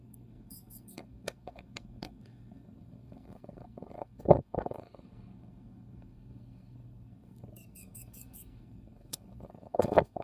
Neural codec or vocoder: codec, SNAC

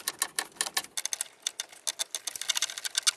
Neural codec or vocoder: none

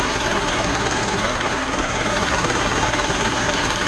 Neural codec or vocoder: codec, SNAC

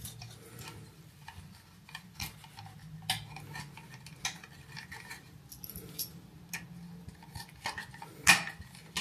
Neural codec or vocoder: none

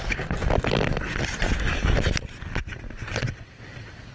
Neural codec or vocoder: none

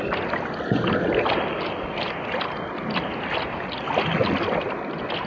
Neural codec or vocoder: none